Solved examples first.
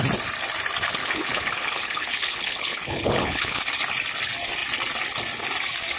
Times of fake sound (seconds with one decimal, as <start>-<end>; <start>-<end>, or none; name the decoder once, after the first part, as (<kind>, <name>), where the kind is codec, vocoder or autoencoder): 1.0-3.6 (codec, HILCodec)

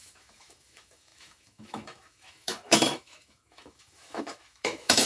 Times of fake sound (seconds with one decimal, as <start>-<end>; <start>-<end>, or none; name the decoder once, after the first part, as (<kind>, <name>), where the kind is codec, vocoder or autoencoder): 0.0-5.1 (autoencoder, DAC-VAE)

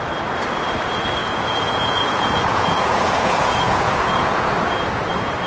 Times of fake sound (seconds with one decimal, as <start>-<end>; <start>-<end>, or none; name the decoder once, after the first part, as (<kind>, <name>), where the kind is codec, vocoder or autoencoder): 1.2-4.5 (vocoder, Vocos)

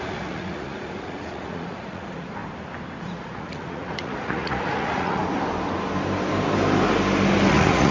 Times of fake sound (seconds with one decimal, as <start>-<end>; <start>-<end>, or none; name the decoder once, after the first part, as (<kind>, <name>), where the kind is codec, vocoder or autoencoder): 0.0-2.4 (vocoder, Vocos); 3.0-5.2; 7.5-7.9

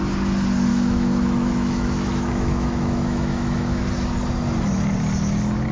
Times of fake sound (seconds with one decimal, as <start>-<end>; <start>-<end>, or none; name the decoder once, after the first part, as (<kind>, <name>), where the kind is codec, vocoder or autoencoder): 0.7-3.9 (autoencoder, DAC-VAE)